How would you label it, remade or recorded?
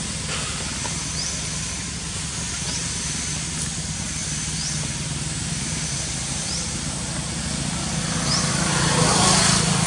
recorded